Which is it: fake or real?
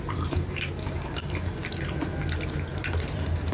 fake